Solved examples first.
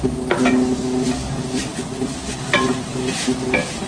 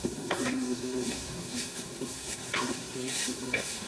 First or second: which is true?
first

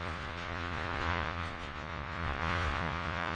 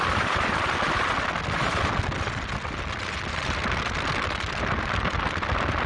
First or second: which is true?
second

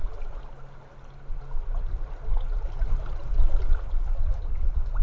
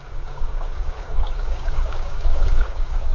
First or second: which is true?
first